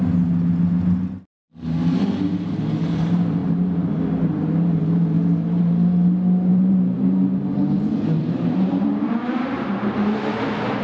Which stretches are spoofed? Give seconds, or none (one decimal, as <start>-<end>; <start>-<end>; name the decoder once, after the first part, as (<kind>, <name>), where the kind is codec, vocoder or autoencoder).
3.4-3.9 (vocoder, BigVGAN v2); 6.5-10.2